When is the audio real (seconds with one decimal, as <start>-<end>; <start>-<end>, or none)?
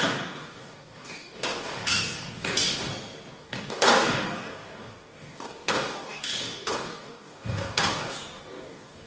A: 2.9-3.4